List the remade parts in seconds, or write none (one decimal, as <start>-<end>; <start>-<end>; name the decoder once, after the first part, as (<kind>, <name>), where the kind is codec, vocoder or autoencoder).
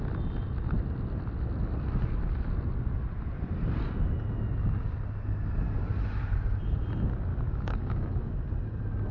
7.3-8.3 (codec, DAC)